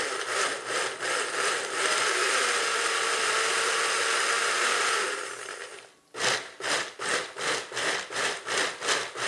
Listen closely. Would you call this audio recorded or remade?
recorded